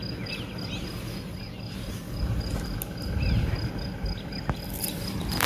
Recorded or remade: recorded